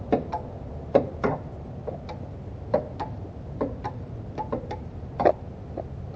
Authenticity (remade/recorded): recorded